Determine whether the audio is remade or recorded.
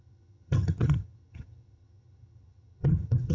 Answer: remade